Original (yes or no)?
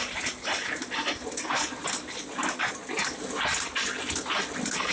yes